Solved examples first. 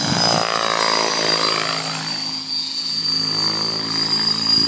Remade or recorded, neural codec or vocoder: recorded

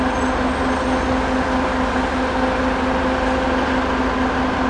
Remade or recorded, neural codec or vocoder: recorded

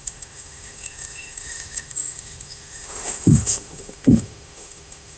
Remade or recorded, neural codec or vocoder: remade, autoencoder, DAC-VAE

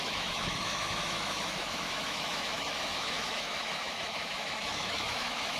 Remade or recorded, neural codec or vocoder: remade, autoencoder, DAC-VAE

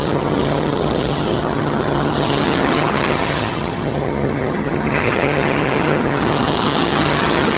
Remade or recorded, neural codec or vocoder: remade, vocoder, HiFi-GAN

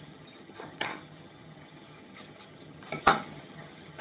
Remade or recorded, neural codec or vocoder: remade, vocoder, HiFi-GAN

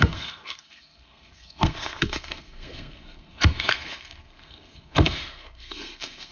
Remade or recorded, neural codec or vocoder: remade, codec, SNAC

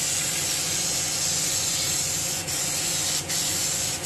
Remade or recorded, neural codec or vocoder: remade, vocoder, Vocos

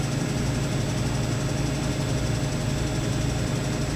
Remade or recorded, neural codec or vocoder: recorded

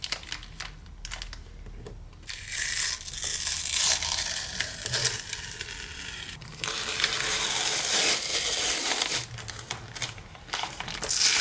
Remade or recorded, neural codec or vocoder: recorded